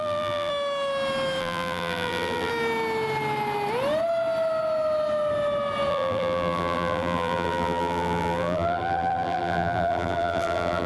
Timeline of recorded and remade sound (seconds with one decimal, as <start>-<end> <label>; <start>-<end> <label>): 0.0-0.5 remade; 0.5-1.4 recorded; 1.4-2.5 remade; 2.5-5.9 recorded; 5.9-10.9 remade